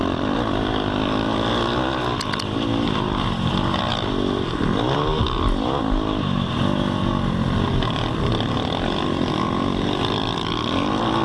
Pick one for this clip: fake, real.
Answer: real